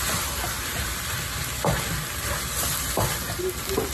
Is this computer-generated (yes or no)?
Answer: yes